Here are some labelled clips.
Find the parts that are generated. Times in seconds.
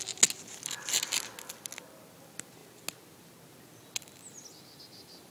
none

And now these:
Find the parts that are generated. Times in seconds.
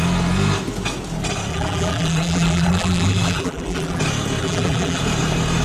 1.5-4.0 (vocoder, BigVGAN v2); 4.4-5.0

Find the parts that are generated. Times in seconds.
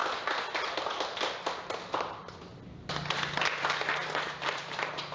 1.9-2.5 (vocoder, BigVGAN v2); 3.6-5.1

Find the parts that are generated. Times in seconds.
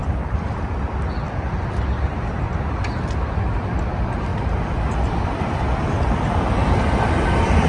0.0-2.5 (vocoder, BigVGAN v2); 4.3-5.6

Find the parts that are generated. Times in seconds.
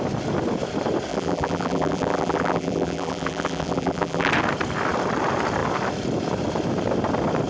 1.1-4.3 (vocoder, BigVGAN v2)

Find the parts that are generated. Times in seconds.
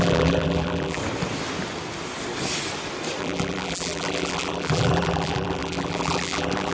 0.0-1.0 (vocoder, BigVGAN v2); 3.2-6.7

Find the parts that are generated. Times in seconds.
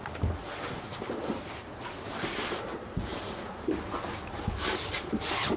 0.9-2.5 (vocoder, BigVGAN v2); 3.1-3.6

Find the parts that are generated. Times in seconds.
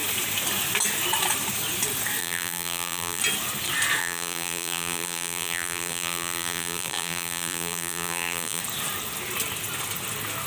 2.2-3.2 (vocoder, BigVGAN v2); 4.0-8.6